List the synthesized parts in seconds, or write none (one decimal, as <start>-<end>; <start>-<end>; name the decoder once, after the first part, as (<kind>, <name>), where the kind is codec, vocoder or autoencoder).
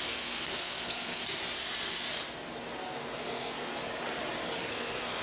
0.0-1.2 (codec, SNAC); 2.7-3.7; 4.7-5.2